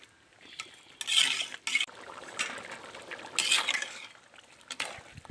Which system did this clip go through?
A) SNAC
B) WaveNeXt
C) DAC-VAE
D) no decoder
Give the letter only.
D